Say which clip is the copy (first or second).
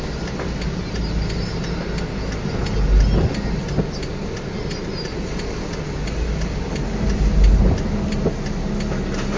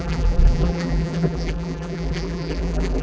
second